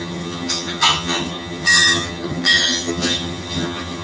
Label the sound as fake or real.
fake